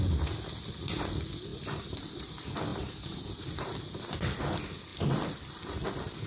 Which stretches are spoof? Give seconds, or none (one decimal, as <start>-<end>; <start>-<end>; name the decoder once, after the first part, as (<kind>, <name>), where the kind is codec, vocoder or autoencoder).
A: 1.5-2.3 (vocoder, BigVGAN v2); 2.7-3.8